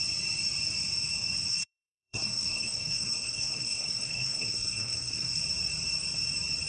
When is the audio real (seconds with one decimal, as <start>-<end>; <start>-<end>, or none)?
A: 0.0-1.5; 5.4-6.7

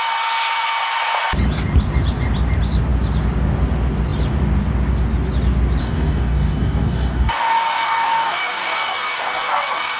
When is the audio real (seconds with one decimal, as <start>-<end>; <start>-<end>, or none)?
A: 0.0-5.8

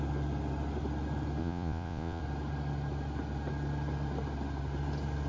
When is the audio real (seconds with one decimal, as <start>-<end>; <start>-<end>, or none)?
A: 0.0-1.4; 2.2-5.3